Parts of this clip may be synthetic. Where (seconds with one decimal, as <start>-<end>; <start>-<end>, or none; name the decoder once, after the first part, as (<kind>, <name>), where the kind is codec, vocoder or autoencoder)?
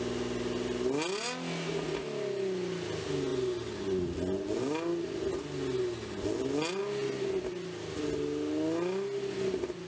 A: none